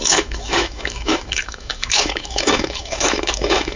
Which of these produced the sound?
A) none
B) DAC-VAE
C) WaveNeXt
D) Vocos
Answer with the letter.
B